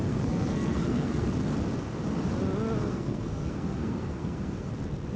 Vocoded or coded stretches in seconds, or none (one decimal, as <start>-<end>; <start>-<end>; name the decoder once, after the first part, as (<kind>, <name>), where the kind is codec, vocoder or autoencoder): 0.0-1.3 (codec, SNAC); 2.8-4.7